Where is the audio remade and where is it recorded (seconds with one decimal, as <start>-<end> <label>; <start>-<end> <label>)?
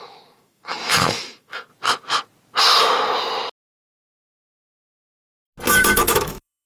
0.0-1.7 remade; 1.7-5.7 recorded; 5.7-6.7 remade